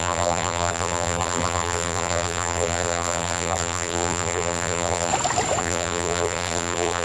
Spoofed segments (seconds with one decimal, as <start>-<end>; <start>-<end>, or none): 0.0-5.1; 5.6-7.0